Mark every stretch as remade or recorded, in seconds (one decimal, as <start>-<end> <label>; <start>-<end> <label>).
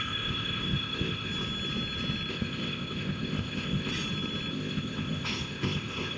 0.0-1.3 remade; 1.3-2.3 recorded; 2.3-3.9 remade; 3.9-4.5 recorded; 4.5-6.2 remade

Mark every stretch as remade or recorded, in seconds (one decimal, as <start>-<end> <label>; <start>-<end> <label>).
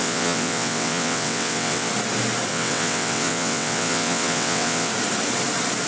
0.0-1.9 remade; 1.9-2.5 recorded; 2.5-4.9 remade; 4.9-5.9 recorded